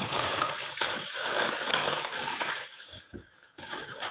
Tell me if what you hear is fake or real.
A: fake